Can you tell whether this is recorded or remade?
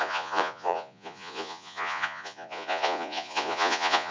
remade